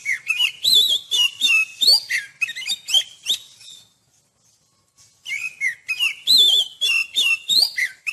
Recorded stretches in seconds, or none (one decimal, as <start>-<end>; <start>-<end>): 1.7-4.2; 4.7-5.5